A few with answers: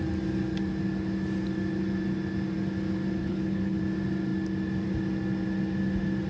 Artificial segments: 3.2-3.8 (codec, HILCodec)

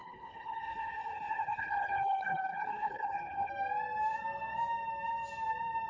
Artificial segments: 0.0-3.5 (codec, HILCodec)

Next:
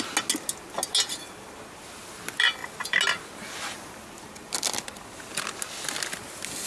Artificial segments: none

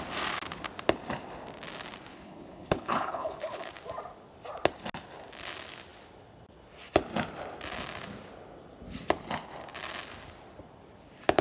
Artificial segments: 2.1-3.7 (codec, HILCodec)